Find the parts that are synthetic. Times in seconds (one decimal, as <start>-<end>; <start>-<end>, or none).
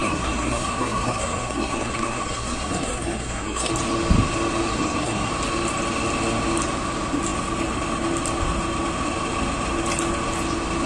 0.0-3.7; 4.7-5.3